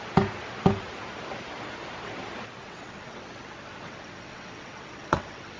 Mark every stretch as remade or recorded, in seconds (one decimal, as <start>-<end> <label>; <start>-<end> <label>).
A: 0.0-2.6 recorded; 2.6-5.6 remade